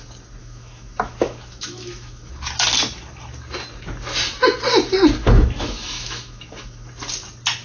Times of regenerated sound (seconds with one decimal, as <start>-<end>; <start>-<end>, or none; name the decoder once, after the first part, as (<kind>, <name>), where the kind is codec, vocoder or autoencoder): 0.4-2.3 (autoencoder, DAC-VAE); 5.2-6.9